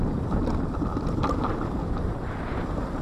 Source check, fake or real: real